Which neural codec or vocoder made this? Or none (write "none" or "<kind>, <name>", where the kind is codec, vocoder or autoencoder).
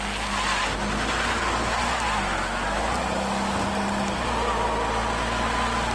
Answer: none